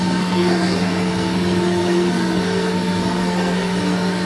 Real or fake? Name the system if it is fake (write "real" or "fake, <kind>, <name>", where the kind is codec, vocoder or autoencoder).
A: fake, codec, SNAC